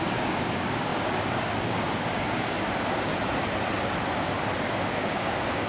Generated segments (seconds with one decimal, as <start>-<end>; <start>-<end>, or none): 0.0-3.1; 4.6-5.7